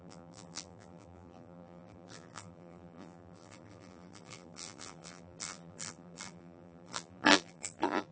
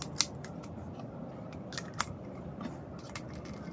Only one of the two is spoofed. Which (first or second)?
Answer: first